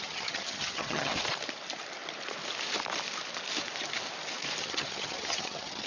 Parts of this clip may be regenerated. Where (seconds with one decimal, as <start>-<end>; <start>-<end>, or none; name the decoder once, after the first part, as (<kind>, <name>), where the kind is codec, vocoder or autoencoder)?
0.0-1.1 (vocoder, HiFi-GAN); 4.6-5.9